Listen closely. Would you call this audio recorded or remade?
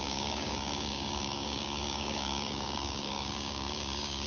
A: remade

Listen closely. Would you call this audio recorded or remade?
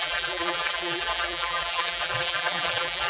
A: remade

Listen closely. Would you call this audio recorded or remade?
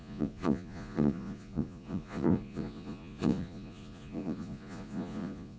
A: remade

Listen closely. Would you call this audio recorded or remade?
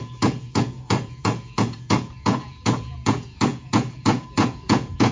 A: remade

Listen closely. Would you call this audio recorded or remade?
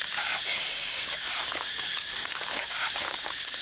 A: remade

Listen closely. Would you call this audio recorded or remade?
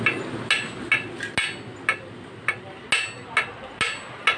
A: recorded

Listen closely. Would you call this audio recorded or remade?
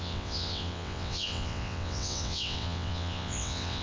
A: remade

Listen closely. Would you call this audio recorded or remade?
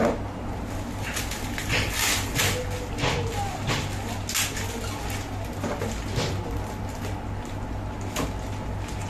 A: recorded